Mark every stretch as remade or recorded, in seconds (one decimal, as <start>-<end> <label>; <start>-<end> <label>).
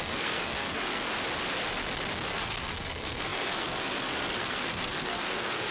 0.0-1.1 remade; 1.1-2.3 recorded; 2.3-5.7 remade